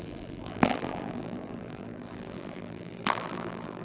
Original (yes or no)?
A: no